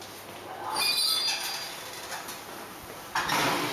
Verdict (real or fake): real